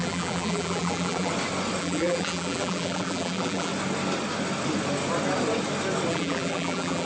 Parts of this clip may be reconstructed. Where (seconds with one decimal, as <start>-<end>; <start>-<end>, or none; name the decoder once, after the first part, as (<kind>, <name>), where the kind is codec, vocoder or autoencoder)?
0.0-1.3 (vocoder, BigVGAN v2); 1.8-3.7; 6.1-7.1